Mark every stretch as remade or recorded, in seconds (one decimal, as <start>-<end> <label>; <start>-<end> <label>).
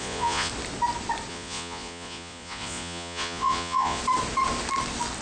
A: 0.0-0.5 remade; 0.5-1.3 recorded; 1.3-4.0 remade; 4.0-5.2 recorded